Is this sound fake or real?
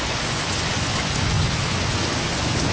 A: fake